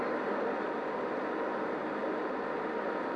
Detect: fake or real real